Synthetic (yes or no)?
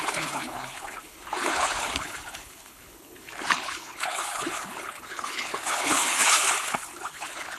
yes